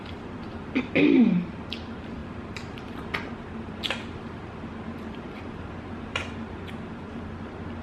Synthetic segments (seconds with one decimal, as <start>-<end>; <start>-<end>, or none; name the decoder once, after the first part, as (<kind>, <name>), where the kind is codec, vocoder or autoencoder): 0.0-7.8 (vocoder, BigVGAN v2)